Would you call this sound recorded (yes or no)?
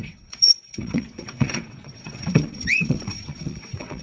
no